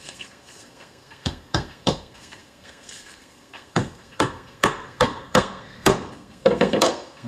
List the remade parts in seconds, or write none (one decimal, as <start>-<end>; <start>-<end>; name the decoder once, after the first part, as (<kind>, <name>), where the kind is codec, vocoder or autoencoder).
0.0-7.3 (codec, SNAC)